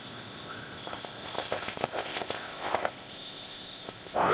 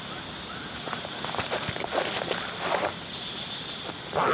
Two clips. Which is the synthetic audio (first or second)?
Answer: first